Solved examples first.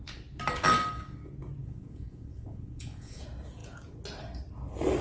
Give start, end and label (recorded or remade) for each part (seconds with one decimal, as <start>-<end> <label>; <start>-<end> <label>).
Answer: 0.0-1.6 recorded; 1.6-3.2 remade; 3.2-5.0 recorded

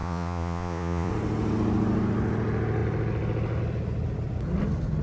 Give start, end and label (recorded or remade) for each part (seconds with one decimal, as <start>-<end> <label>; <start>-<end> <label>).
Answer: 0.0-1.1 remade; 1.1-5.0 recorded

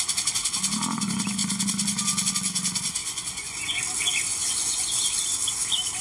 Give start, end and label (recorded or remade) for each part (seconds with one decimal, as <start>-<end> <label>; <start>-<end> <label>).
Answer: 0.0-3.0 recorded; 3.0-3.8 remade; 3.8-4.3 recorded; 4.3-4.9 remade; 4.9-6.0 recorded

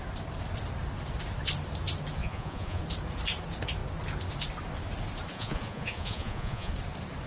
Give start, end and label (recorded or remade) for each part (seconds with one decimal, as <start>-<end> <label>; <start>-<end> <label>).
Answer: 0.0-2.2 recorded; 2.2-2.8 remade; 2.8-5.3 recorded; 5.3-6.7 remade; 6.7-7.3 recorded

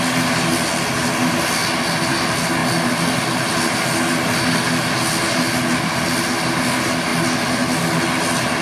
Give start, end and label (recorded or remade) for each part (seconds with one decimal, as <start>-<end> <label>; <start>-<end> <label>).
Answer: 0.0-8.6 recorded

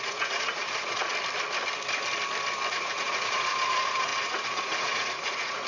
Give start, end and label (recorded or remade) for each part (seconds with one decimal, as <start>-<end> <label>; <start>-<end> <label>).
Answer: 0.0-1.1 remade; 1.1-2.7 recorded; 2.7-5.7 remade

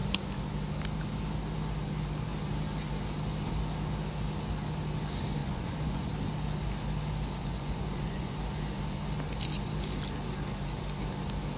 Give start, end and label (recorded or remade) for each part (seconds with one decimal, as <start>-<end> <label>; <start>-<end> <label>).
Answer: 0.0-5.4 recorded; 5.4-6.1 remade; 6.1-7.4 recorded; 7.4-8.4 remade; 8.4-11.6 recorded

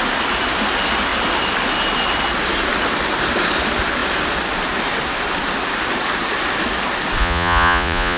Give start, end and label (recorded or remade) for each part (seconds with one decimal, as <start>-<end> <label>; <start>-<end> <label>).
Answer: 0.0-7.2 recorded; 7.2-8.2 remade